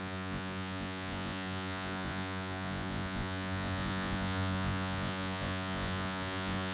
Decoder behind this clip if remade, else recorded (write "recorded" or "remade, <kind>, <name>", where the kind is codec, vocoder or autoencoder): remade, vocoder, Vocos